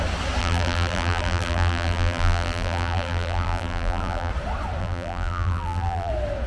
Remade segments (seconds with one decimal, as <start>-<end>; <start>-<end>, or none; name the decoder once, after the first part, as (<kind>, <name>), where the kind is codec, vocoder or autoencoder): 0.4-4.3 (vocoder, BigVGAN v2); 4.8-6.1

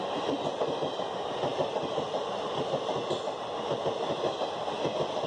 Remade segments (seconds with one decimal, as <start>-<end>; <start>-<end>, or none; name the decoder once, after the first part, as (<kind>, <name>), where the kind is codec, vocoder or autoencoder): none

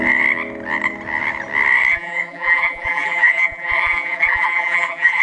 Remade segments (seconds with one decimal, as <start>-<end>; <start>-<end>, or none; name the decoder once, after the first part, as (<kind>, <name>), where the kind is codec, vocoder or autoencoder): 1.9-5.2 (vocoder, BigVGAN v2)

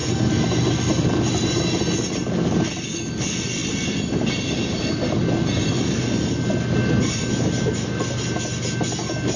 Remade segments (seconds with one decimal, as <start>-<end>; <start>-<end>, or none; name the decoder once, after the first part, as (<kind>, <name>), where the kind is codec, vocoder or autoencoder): none

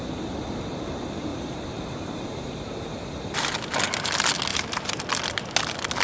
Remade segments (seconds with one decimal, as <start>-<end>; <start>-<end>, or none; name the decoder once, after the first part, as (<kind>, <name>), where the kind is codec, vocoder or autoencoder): 0.0-0.6 (vocoder, BigVGAN v2); 1.3-3.1; 4.5-5.0

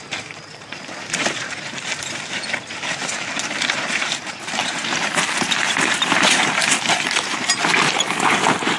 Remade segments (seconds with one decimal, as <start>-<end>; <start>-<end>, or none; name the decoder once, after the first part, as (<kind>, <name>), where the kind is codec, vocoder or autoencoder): 0.0-8.8 (vocoder, BigVGAN v2)

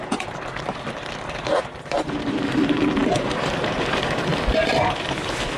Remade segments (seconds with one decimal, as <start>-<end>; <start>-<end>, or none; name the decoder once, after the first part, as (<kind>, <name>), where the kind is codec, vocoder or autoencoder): 3.0-5.6 (vocoder, BigVGAN v2)